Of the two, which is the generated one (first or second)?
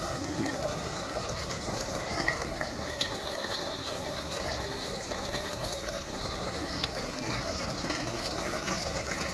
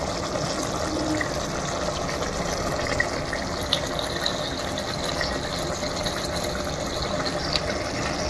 first